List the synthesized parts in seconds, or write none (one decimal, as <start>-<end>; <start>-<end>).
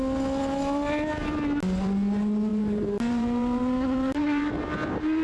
2.5-4.5